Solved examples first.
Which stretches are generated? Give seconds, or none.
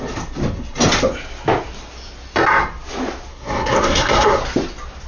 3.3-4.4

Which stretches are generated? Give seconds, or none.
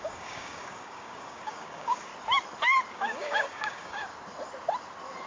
0.0-2.1; 2.9-4.1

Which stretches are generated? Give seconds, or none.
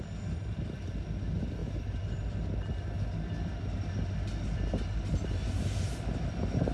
none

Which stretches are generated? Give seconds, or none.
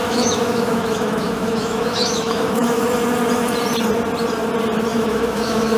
0.0-2.8; 4.9-5.8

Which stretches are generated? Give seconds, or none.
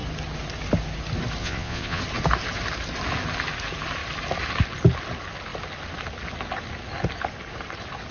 1.4-2.0